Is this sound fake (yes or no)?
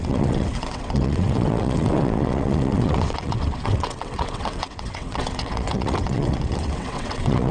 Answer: yes